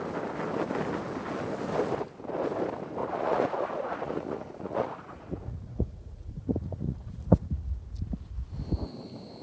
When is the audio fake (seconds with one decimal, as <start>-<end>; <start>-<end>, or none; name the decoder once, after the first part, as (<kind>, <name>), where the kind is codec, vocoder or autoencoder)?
3.0-7.8 (vocoder, Vocos)